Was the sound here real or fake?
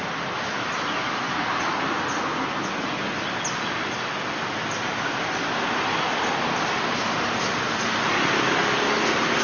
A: real